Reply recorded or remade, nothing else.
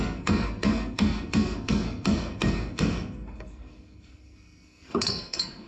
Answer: remade